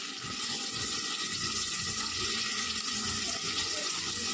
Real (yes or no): no